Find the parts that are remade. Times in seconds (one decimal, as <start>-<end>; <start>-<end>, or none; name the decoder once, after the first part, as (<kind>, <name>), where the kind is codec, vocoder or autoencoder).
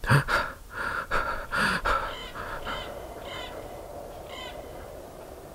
0.0-2.2 (vocoder, BigVGAN v2); 3.8-5.5